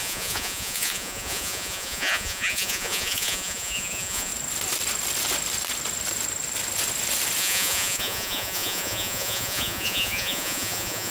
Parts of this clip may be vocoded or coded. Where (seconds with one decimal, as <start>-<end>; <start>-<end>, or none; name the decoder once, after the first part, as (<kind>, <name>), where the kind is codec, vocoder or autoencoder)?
0.0-4.3 (vocoder, Vocos); 7.4-11.1